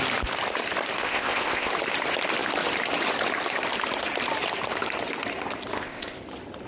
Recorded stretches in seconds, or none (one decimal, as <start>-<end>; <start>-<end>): 0.0-1.0; 1.7-5.7; 6.2-6.7